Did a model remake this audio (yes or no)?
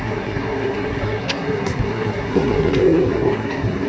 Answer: yes